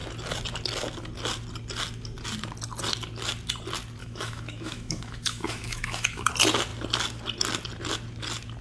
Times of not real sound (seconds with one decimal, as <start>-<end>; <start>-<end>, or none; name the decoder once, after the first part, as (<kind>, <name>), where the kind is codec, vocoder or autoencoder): 4.0-6.3 (autoencoder, DAC-VAE)